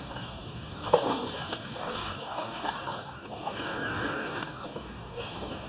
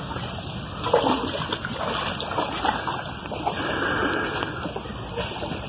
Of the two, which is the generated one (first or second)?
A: first